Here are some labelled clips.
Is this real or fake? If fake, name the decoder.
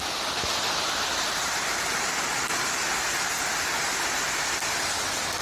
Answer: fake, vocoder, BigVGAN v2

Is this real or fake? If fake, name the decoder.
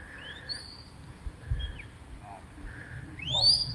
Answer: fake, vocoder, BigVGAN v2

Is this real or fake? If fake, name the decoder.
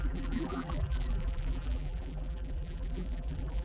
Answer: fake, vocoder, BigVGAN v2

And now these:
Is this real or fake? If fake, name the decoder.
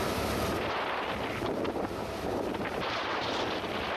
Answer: fake, vocoder, BigVGAN v2